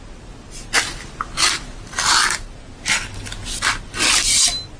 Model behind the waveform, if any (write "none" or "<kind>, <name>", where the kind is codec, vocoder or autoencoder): none